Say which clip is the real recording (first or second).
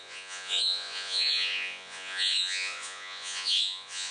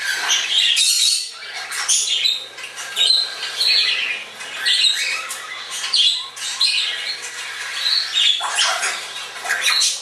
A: second